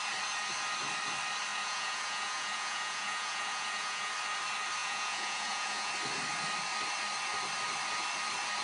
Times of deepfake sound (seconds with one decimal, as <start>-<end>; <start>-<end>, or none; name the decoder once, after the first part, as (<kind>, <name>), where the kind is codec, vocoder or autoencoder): 1.5-4.1 (vocoder, Vocos); 4.8-5.9